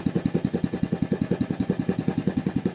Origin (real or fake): fake